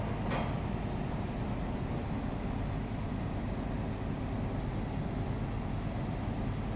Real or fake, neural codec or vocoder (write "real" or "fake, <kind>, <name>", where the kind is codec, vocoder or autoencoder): real